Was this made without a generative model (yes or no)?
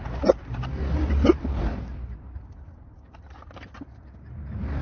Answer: no